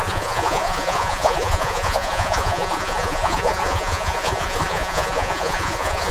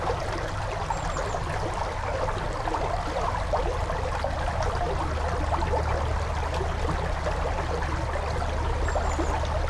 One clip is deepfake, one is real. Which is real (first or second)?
second